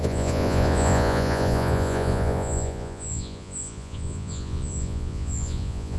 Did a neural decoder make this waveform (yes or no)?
yes